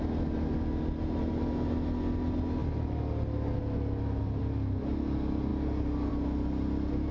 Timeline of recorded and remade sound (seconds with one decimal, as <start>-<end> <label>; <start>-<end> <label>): 0.0-7.1 recorded